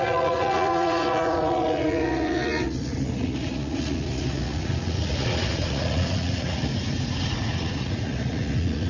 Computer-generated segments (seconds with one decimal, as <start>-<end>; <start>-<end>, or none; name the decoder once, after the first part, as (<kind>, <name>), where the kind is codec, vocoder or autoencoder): 0.0-6.7 (vocoder, Vocos); 7.2-8.9